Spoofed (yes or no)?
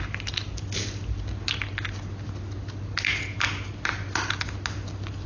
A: no